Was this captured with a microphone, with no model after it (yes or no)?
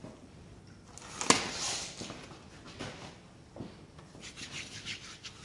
yes